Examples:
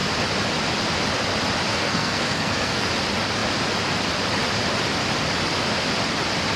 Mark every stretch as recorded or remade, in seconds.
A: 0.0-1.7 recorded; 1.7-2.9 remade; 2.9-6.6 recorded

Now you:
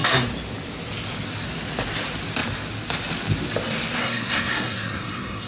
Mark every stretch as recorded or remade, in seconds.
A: 0.0-4.0 recorded; 4.0-5.5 remade